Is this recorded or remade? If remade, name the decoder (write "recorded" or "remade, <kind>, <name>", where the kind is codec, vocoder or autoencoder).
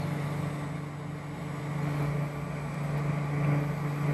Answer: recorded